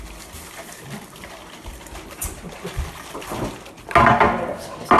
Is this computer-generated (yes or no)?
no